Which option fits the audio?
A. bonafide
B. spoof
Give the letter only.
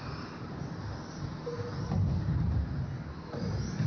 A